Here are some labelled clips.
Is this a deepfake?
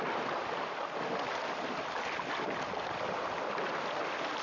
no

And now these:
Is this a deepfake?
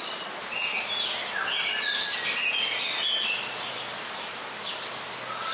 no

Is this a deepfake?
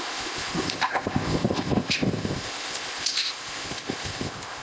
yes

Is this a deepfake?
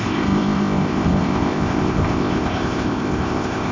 yes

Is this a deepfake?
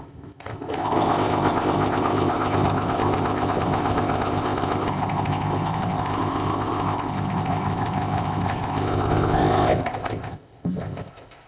yes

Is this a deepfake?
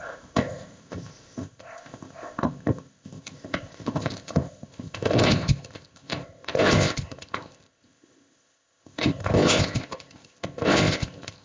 yes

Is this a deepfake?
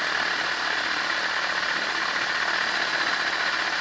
no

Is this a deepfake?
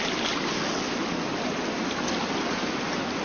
no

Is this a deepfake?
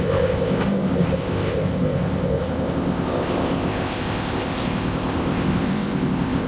yes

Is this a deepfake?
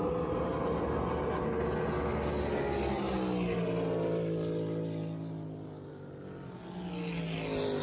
no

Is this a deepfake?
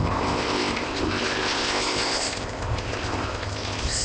yes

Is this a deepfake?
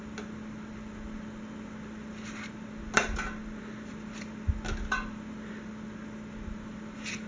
no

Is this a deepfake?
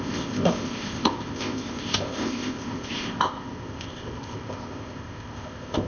yes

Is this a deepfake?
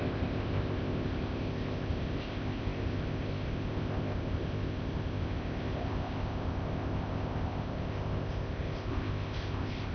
yes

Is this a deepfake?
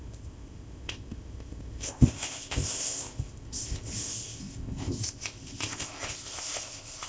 yes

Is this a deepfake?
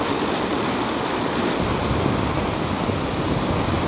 no